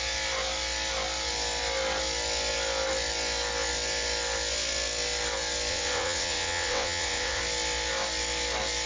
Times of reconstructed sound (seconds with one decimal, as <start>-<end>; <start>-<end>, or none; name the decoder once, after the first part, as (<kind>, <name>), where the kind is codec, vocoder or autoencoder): 5.7-7.4 (vocoder, WaveNeXt)